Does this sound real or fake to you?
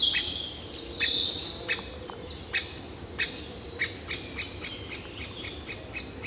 real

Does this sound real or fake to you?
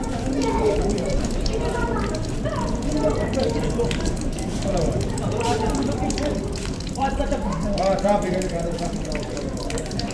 fake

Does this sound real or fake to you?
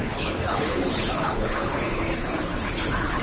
fake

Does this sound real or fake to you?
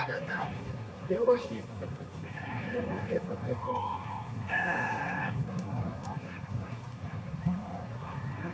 fake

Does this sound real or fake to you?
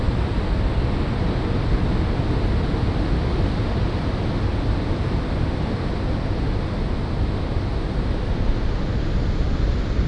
real